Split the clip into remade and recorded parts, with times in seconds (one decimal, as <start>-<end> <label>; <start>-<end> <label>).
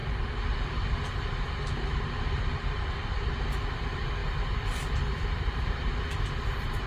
0.0-4.2 recorded; 4.2-5.6 remade; 5.6-6.9 recorded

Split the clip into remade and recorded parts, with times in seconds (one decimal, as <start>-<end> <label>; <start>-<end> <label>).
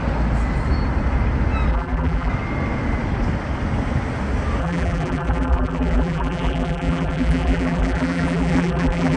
0.0-1.7 recorded; 1.7-2.3 remade; 2.3-4.6 recorded; 4.6-9.2 remade